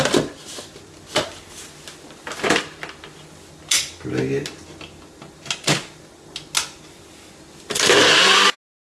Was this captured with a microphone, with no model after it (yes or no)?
yes